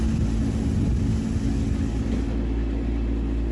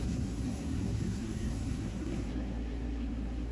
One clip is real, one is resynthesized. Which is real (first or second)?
first